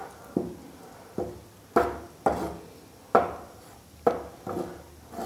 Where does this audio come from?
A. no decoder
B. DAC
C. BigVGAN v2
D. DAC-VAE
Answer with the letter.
A